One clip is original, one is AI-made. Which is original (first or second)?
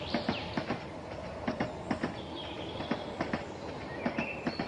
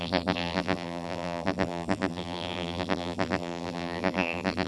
first